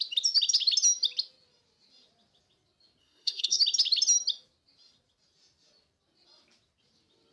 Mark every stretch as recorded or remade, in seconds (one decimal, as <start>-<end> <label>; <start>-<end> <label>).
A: 0.0-3.0 recorded; 3.0-3.6 remade; 3.6-7.3 recorded